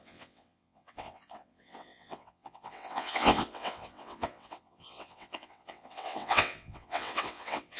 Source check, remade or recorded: remade